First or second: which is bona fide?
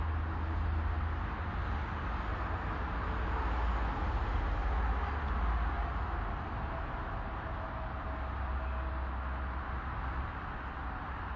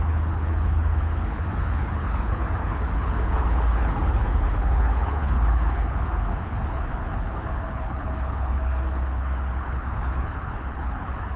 first